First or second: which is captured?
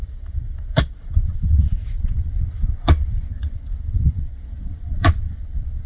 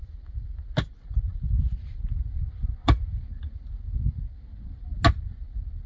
second